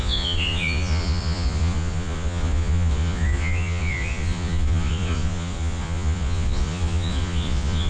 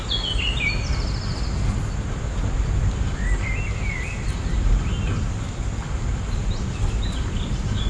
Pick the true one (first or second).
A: second